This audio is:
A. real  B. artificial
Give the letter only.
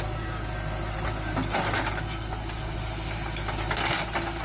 A